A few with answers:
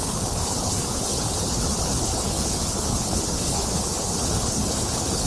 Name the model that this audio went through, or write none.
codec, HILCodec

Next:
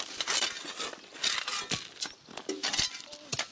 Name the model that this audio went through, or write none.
none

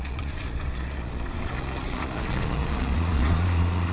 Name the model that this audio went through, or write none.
vocoder, Vocos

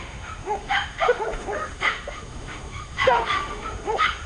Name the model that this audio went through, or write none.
autoencoder, DAC-VAE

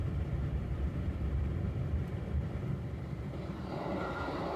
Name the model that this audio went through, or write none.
vocoder, BigVGAN v2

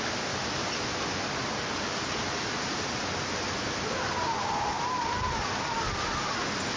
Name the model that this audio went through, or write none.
none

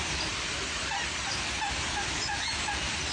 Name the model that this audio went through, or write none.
none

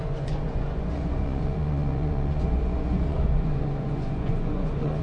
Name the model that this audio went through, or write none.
vocoder, Vocos